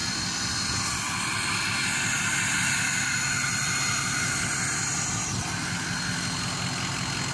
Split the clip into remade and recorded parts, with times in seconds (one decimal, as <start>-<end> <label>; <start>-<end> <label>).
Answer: 0.0-7.3 recorded